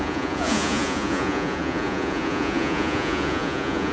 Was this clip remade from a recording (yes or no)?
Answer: yes